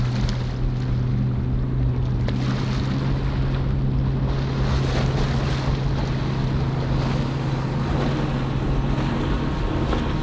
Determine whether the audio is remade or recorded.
recorded